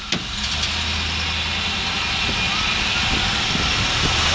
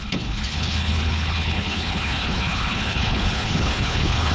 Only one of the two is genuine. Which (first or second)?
first